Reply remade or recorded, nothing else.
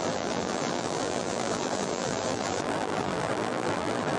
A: remade